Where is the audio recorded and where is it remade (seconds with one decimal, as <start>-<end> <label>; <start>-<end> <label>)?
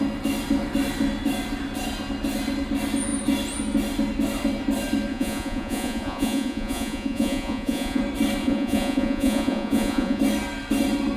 0.0-5.1 recorded; 5.1-8.0 remade; 8.0-8.4 recorded; 8.4-10.2 remade; 10.2-11.2 recorded